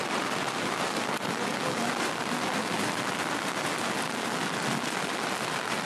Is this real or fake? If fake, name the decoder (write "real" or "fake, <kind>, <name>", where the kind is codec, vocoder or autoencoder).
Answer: real